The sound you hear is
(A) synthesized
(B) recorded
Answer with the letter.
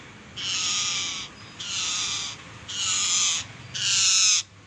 B